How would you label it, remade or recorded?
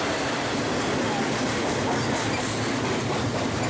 recorded